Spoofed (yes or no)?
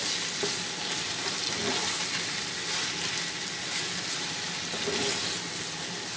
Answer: no